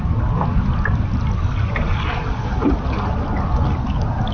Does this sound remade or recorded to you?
recorded